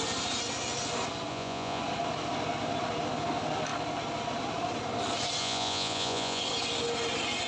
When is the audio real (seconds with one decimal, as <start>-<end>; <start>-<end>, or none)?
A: 0.0-1.3; 1.8-5.4; 6.4-7.5